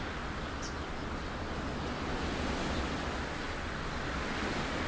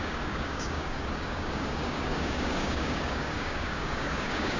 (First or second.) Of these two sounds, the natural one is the first